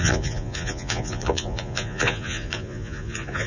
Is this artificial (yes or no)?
yes